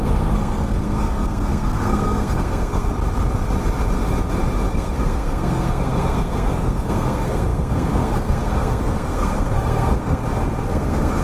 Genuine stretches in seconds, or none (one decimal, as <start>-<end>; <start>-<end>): 2.9-4.7; 10.2-10.7